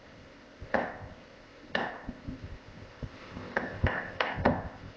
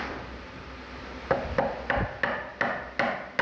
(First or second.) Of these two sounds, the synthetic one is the first